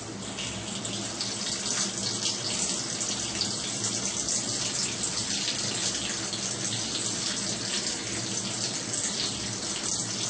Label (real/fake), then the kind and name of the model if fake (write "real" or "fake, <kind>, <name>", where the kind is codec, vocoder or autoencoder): real